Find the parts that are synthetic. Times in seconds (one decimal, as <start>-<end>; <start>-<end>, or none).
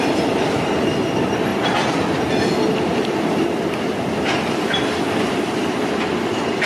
none